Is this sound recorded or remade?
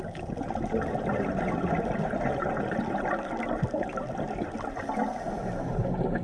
recorded